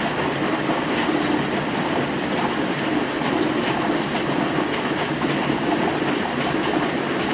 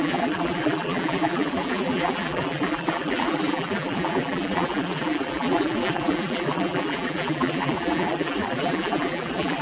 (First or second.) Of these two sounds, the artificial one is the second